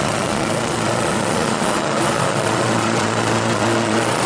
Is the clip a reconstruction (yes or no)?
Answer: yes